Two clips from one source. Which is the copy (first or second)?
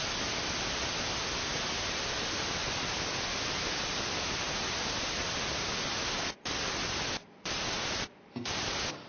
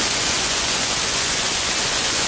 second